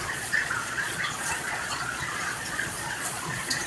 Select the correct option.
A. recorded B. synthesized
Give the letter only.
B